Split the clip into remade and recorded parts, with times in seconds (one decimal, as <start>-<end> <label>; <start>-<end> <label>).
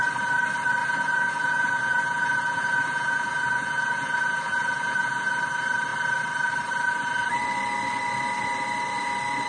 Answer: 0.0-0.8 recorded; 0.8-5.4 remade; 5.4-9.5 recorded